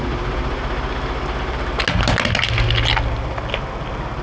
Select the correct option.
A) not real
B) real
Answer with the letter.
B